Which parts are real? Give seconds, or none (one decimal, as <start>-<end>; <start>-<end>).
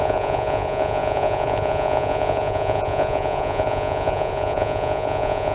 none